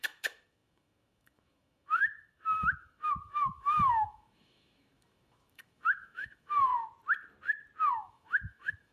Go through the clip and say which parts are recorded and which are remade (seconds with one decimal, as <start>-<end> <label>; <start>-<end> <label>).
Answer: 0.0-6.7 remade; 6.7-7.9 recorded; 7.9-8.9 remade